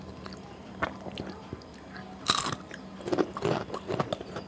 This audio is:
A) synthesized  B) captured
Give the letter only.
B